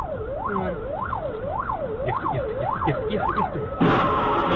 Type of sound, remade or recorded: recorded